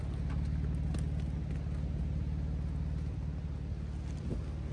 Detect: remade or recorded recorded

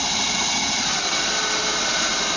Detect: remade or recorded recorded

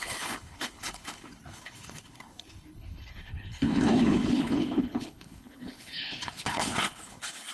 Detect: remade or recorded remade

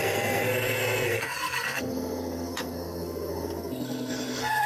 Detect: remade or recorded remade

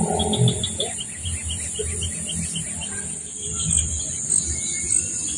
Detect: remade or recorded recorded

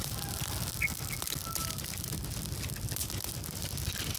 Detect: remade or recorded recorded